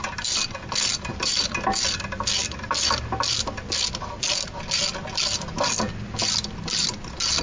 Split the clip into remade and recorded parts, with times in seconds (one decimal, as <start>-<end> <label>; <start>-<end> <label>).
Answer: 0.0-7.4 recorded